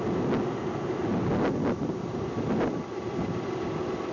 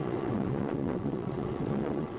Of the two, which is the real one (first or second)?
first